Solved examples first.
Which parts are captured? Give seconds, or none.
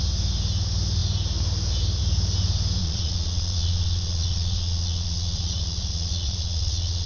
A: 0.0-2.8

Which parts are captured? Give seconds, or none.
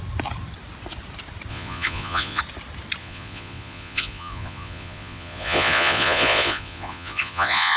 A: 0.0-1.5; 2.4-3.0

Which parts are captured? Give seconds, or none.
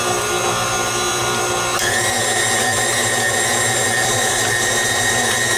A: 0.0-5.6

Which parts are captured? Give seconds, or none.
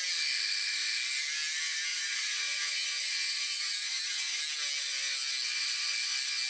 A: 0.0-1.9; 4.4-6.5